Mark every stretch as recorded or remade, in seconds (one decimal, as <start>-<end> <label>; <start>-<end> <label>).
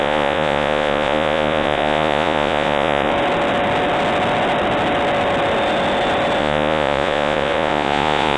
0.0-3.1 remade; 3.1-6.4 recorded; 6.4-8.4 remade